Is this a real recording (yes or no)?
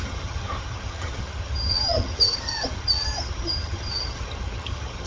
no